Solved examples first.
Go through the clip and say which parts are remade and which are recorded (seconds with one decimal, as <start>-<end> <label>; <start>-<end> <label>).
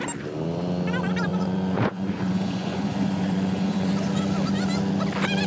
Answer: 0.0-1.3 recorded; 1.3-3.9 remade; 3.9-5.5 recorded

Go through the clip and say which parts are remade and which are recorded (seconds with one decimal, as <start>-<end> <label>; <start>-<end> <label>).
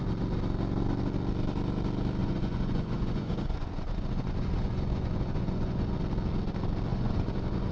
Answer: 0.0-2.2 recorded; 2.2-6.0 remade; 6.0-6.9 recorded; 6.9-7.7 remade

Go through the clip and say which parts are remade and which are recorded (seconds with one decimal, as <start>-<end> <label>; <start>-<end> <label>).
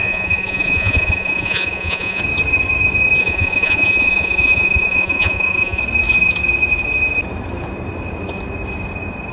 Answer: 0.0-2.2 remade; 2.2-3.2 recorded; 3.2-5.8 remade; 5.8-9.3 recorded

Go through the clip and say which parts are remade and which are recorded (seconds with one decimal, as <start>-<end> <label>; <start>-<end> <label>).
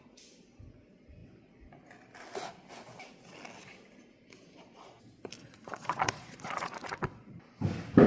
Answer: 0.0-5.4 recorded; 5.4-7.3 remade; 7.3-8.1 recorded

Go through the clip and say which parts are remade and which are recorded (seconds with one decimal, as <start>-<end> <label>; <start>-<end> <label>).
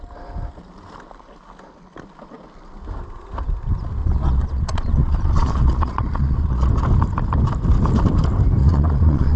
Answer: 0.0-4.0 recorded; 4.0-6.7 remade; 6.7-8.6 recorded; 8.6-9.4 remade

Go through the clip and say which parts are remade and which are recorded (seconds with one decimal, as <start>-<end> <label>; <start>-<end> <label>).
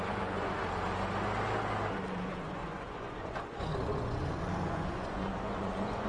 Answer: 0.0-0.6 remade; 0.6-2.2 recorded; 2.2-6.1 remade